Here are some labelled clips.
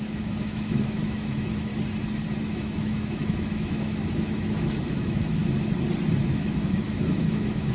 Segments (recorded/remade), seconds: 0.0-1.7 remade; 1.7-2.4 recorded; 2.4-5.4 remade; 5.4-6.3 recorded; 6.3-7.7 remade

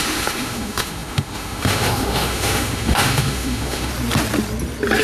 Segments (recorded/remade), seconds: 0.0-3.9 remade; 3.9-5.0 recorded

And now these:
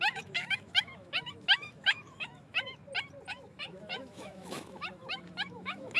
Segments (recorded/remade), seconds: 0.0-2.8 remade; 2.8-3.3 recorded; 3.3-6.0 remade